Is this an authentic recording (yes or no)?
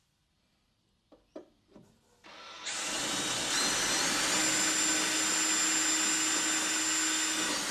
yes